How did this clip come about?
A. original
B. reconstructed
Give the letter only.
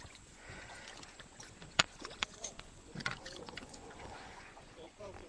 B